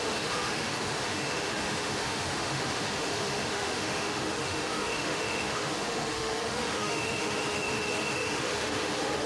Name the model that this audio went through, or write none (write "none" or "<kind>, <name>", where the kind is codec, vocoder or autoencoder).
autoencoder, DAC-VAE